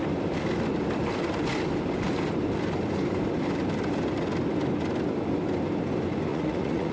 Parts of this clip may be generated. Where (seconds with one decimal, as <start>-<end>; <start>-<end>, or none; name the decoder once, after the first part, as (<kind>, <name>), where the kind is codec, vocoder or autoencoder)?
6.3-6.9 (vocoder, Vocos)

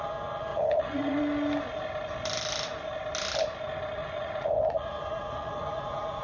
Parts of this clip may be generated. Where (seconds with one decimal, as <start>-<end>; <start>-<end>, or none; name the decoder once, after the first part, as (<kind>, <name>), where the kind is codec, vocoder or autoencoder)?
0.5-1.2 (vocoder, Vocos); 4.0-6.2

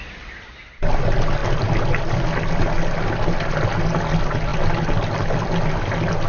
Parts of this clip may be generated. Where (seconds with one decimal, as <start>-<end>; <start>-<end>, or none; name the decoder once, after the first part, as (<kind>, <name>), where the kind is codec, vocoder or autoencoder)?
none

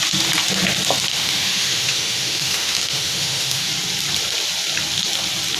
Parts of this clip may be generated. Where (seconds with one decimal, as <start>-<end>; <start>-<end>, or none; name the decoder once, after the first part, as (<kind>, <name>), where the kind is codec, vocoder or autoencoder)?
1.1-3.7 (autoencoder, DAC-VAE)

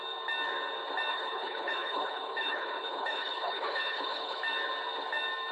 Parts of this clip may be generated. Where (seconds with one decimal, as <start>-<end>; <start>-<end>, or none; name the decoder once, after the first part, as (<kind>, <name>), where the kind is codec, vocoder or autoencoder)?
1.1-4.4 (codec, HILCodec)